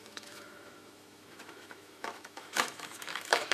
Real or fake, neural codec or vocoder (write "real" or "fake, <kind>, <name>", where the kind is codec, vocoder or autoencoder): fake, autoencoder, DAC-VAE